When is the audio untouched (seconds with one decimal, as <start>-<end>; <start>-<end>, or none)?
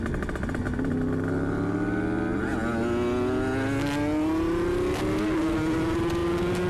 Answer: 0.0-6.7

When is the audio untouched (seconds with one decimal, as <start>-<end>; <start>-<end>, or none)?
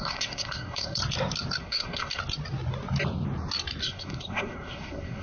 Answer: 1.0-1.6; 2.2-3.8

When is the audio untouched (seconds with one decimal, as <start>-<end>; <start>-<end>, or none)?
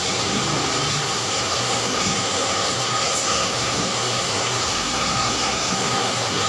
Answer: 0.4-0.9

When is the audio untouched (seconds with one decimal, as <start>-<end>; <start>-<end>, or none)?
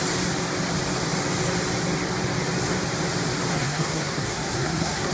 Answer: 0.0-3.5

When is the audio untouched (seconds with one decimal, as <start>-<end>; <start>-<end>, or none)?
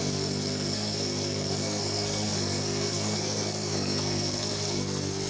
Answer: none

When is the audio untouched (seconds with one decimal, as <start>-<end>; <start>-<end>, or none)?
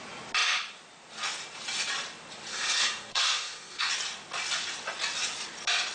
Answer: 0.0-2.5; 3.9-5.9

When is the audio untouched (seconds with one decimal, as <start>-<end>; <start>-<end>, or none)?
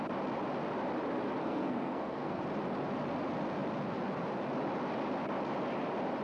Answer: 0.0-1.4; 2.4-6.2